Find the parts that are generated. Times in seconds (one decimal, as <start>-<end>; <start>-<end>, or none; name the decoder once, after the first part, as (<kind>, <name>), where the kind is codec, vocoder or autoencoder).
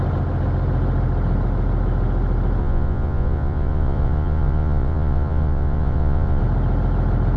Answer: 2.6-6.4 (vocoder, Vocos)